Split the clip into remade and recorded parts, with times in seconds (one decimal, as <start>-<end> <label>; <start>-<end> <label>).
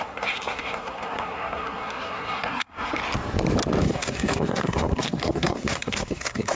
0.0-3.0 remade; 3.0-3.8 recorded; 3.8-6.6 remade